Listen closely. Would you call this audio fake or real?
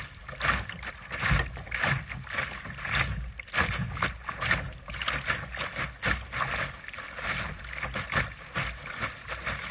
real